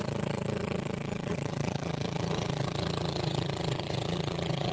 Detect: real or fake fake